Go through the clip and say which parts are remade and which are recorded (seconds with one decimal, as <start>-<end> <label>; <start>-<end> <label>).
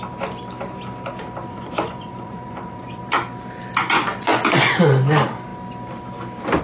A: 0.0-1.5 recorded; 1.5-3.0 remade; 3.0-3.8 recorded; 3.8-4.8 remade; 4.8-6.6 recorded